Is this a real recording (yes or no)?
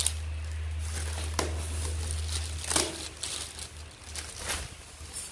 yes